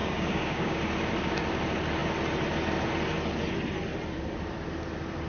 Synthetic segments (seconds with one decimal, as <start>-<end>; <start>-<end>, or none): 0.0-0.8